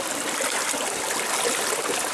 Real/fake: real